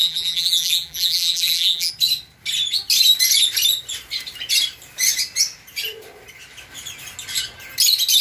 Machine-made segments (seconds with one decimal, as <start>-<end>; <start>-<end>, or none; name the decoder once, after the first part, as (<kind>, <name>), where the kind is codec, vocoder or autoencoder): 0.0-1.9 (vocoder, BigVGAN v2)